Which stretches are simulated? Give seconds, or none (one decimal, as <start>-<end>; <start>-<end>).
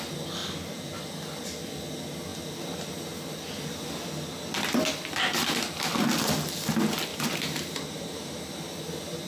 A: 0.4-1.1; 7.1-8.4